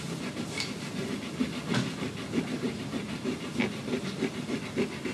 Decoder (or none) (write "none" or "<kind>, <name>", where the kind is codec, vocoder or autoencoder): none